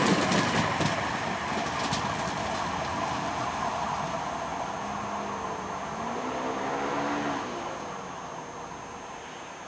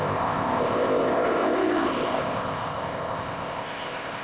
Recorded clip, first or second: first